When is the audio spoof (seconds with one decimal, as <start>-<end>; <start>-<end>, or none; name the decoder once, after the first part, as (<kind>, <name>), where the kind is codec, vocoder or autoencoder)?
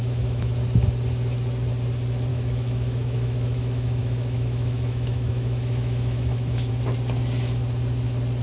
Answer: 0.0-0.5 (autoencoder, DAC-VAE); 2.3-6.7